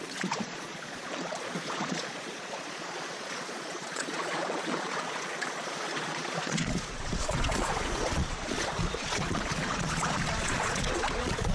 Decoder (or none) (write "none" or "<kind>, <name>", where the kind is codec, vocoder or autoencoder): vocoder, Vocos